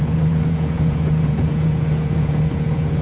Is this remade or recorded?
remade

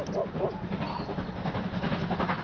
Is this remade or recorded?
recorded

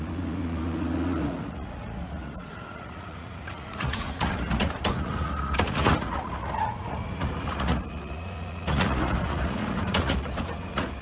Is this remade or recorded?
remade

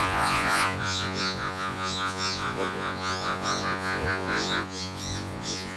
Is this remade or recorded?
remade